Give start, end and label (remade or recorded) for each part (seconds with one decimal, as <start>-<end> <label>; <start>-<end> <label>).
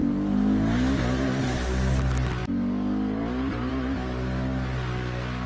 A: 0.0-5.5 recorded